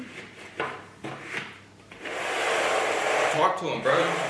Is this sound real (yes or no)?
yes